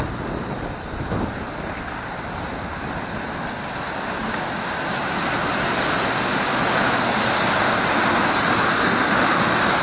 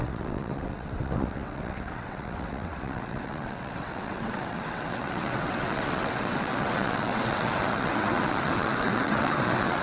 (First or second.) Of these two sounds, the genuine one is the first